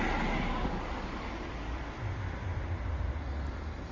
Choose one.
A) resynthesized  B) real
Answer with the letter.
B